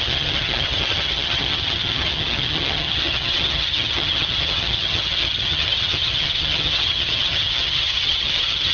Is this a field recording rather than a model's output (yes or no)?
no